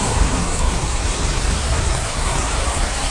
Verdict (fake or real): fake